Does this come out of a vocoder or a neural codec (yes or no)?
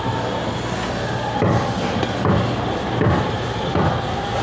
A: no